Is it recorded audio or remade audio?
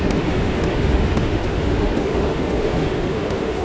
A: remade